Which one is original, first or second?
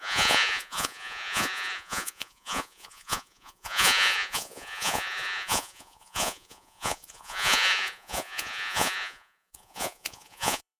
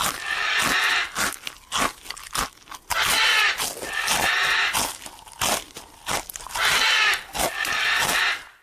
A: second